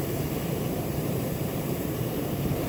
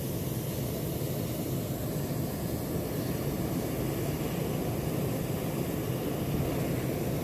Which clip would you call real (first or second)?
second